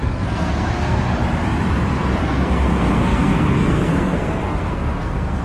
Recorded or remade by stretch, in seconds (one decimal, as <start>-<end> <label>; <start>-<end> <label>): 0.0-1.0 remade; 1.0-2.2 recorded; 2.2-5.4 remade